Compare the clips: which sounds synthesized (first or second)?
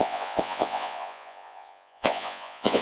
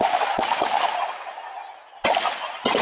first